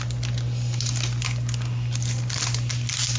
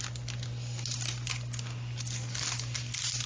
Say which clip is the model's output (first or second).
first